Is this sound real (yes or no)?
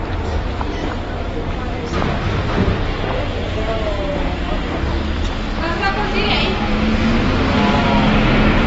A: yes